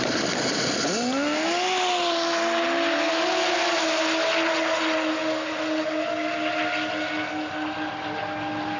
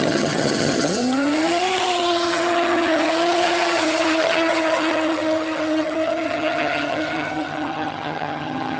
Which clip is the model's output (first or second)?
second